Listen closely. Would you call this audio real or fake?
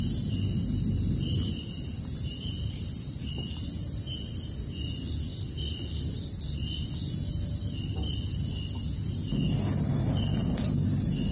real